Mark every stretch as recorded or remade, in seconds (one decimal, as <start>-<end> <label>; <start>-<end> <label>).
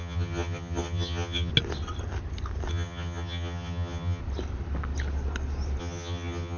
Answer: 0.0-1.5 remade; 1.5-2.7 recorded; 2.7-4.2 remade; 4.2-5.8 recorded; 5.8-6.6 remade